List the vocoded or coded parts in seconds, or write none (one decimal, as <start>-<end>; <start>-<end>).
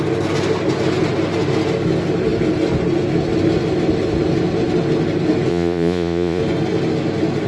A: 5.5-6.4